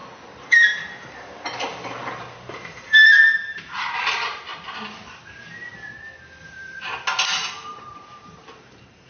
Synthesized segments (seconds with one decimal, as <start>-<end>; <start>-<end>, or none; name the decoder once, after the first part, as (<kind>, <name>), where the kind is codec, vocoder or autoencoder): 0.0-4.5 (vocoder, BigVGAN v2); 7.5-9.1